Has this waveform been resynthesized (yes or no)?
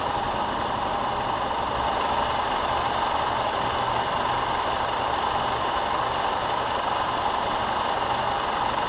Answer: no